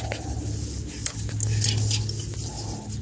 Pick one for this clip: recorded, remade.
recorded